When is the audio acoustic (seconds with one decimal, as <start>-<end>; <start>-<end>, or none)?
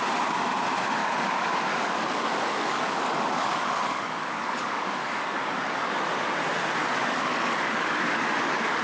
0.0-1.0; 6.0-7.0